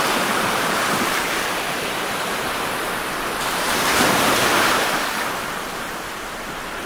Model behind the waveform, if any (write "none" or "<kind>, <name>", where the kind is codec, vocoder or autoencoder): vocoder, BigVGAN v2